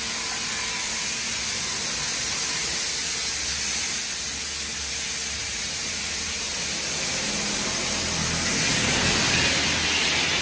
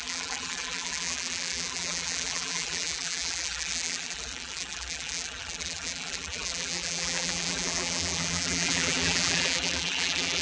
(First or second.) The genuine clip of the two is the first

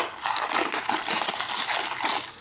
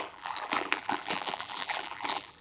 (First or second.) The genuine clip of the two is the first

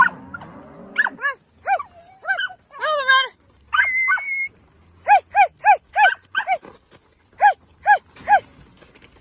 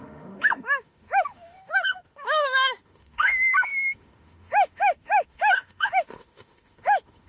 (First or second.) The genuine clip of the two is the first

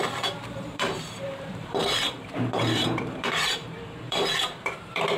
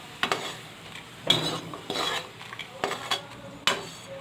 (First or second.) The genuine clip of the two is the second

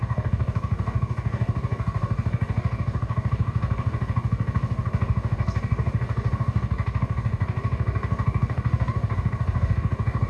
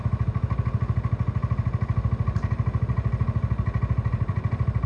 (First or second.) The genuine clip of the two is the second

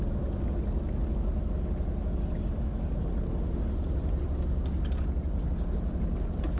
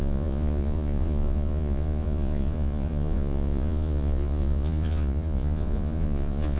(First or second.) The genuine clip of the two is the first